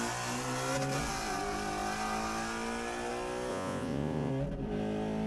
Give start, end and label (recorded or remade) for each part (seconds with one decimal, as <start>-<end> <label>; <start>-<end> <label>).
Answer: 0.0-3.5 recorded; 3.5-4.3 remade; 4.3-5.3 recorded